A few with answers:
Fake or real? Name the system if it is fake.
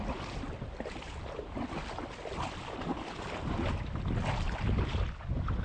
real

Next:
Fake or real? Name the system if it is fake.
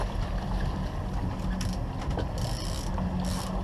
real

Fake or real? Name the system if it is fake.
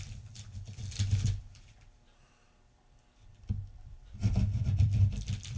fake, vocoder, BigVGAN v2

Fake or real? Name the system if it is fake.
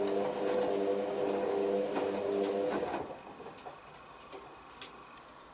real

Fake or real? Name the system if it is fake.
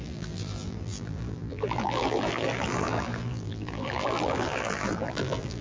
fake, vocoder, BigVGAN v2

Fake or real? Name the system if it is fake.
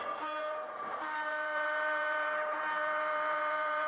fake, vocoder, BigVGAN v2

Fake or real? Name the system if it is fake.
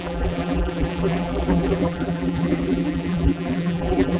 fake, vocoder, BigVGAN v2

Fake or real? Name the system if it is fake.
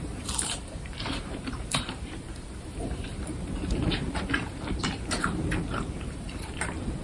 fake, vocoder, BigVGAN v2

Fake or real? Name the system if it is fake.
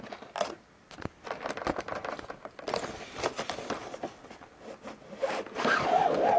real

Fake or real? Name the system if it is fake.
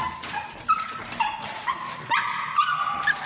real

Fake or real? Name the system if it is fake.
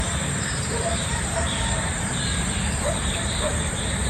fake, vocoder, BigVGAN v2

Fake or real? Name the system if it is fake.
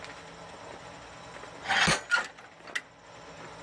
real